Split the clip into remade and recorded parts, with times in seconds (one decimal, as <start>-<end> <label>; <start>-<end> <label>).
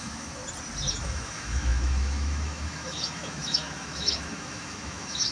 0.0-0.4 remade; 0.4-0.9 recorded; 0.9-5.3 remade